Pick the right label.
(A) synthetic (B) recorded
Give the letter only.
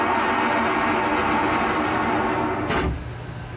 B